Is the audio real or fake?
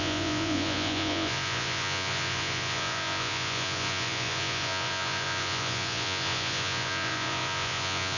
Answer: fake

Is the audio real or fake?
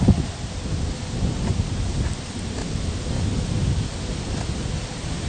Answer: real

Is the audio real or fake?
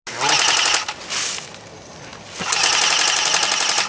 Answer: real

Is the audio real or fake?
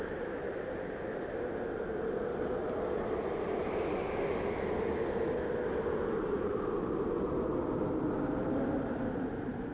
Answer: real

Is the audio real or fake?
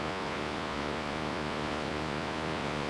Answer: fake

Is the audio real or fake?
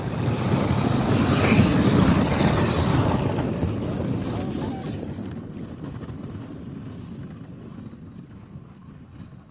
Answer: real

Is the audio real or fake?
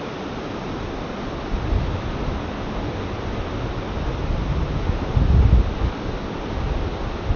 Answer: real